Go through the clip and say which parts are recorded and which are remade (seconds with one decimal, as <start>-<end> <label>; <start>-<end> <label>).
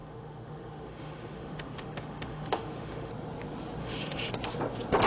0.0-3.1 remade; 3.1-3.8 recorded; 3.8-4.3 remade; 4.3-5.1 recorded